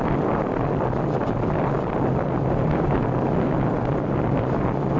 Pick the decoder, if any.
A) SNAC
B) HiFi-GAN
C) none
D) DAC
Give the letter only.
C